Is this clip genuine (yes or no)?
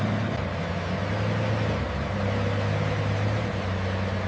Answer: yes